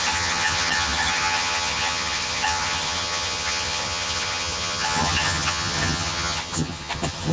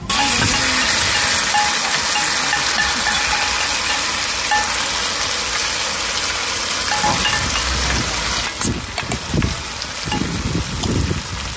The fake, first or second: first